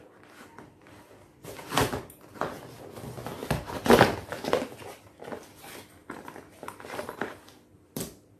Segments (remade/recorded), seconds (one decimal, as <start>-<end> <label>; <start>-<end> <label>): 0.0-6.0 recorded; 6.0-7.1 remade; 7.1-7.7 recorded; 7.7-8.4 remade